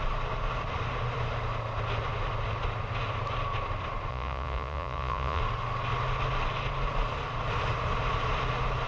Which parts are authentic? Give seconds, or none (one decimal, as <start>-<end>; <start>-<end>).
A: 0.0-4.1; 5.4-8.9